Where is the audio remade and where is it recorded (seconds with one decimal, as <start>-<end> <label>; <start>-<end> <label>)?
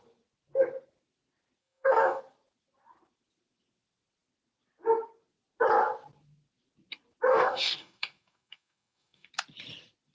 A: 0.0-1.6 recorded; 1.6-2.2 remade; 2.2-7.3 recorded; 7.3-9.3 remade; 9.3-10.1 recorded